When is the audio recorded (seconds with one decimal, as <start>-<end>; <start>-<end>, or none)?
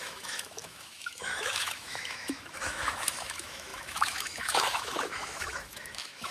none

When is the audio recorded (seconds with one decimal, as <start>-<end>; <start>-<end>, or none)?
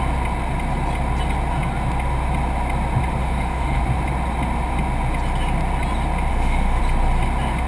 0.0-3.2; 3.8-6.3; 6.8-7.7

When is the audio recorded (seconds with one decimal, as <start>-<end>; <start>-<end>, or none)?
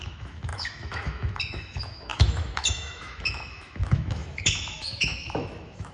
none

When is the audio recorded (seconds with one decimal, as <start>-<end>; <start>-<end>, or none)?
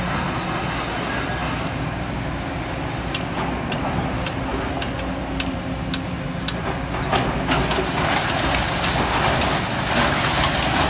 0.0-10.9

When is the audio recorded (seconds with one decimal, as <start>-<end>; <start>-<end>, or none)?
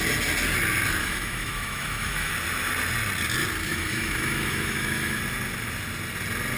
0.0-1.0; 2.3-3.7; 5.2-6.6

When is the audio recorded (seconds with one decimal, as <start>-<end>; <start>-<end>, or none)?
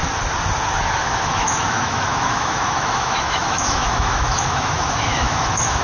0.0-1.0